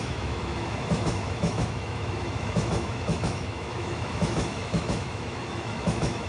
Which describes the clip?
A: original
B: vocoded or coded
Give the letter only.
B